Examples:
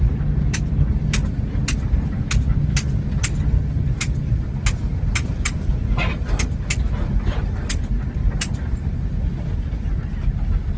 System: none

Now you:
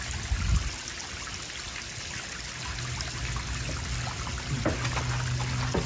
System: none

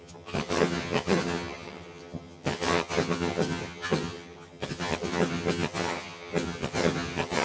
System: vocoder, HiFi-GAN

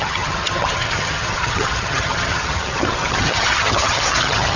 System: vocoder, HiFi-GAN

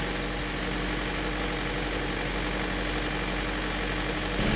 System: none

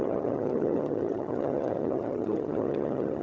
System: vocoder, HiFi-GAN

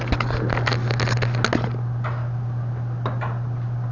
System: none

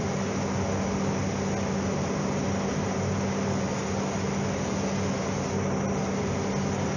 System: none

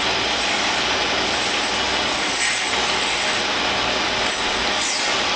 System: none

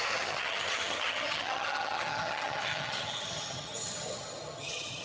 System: vocoder, HiFi-GAN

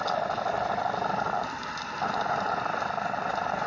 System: none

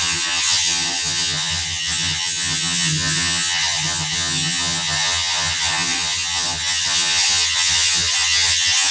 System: vocoder, HiFi-GAN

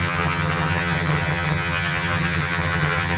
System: vocoder, HiFi-GAN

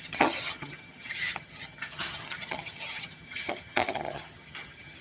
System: vocoder, HiFi-GAN